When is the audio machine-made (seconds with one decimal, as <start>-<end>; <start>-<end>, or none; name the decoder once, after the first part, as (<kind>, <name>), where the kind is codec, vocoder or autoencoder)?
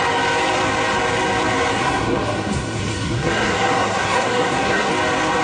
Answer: 1.7-4.9 (codec, SNAC)